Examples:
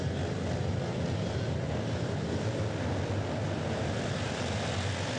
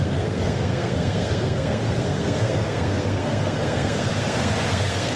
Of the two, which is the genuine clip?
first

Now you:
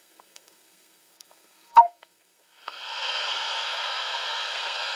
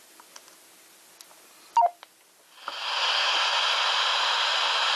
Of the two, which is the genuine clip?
second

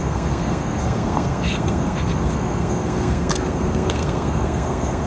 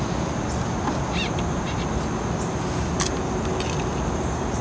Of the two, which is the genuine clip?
second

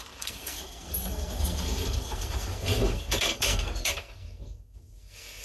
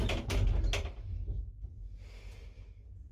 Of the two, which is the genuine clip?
second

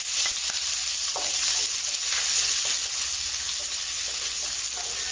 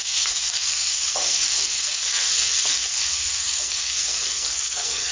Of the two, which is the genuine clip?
first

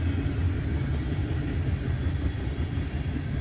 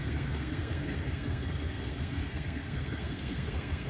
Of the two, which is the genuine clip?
first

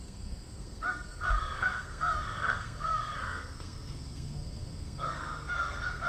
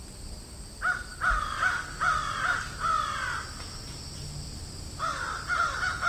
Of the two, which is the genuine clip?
second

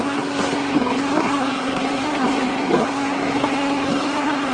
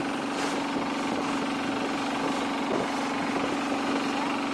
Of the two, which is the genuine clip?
second